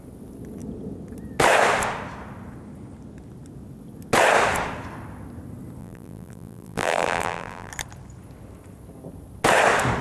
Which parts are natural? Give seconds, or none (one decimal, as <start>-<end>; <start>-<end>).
0.0-5.8; 7.7-10.0